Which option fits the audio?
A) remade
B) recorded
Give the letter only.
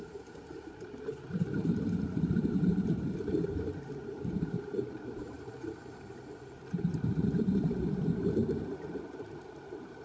A